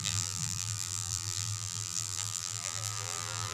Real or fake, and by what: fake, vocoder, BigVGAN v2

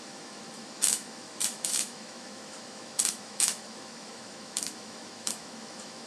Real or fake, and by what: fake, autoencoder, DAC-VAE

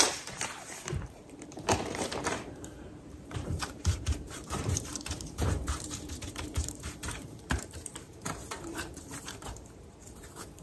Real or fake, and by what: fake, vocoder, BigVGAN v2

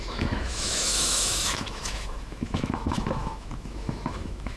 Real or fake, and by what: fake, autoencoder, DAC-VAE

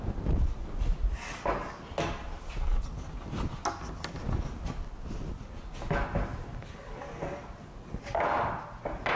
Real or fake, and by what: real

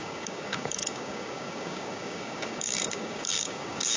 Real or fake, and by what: fake, codec, DAC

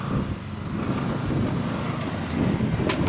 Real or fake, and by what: real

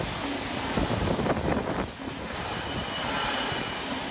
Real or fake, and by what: real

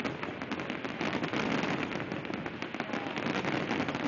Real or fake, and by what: real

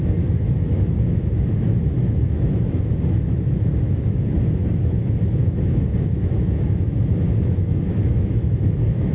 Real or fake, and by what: fake, autoencoder, DAC-VAE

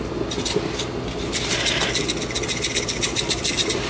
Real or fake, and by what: real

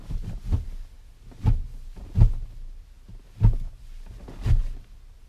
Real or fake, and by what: real